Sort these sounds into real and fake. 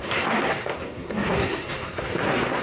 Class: fake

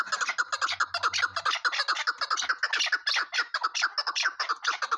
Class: real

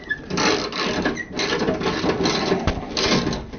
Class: real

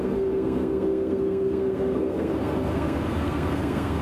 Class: fake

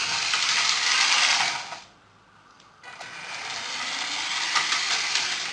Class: real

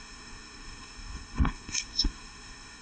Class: fake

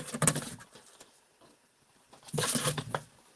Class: real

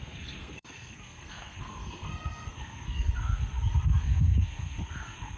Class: fake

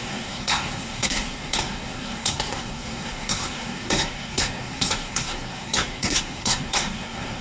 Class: fake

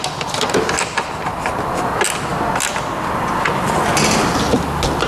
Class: real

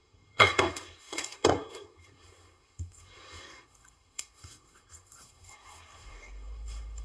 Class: fake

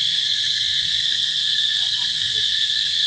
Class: fake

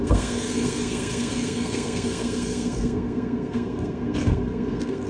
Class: fake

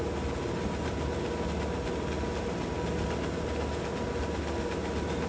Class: real